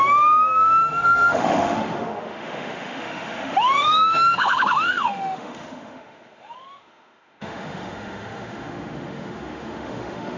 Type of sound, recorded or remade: remade